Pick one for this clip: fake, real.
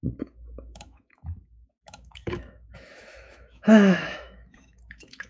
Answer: fake